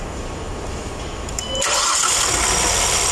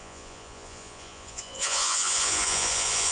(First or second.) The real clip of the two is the first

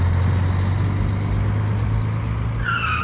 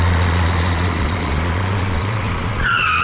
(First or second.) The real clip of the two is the first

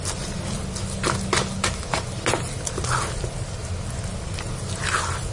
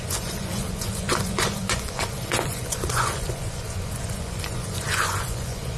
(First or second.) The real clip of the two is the first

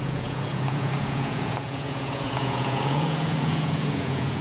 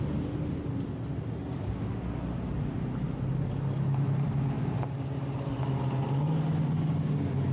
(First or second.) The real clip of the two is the second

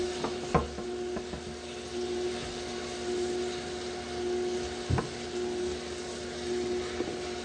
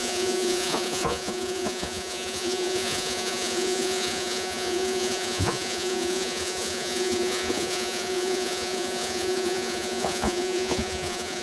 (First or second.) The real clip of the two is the first